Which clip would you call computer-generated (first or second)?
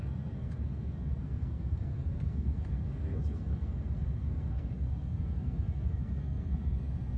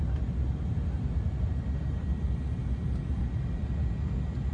first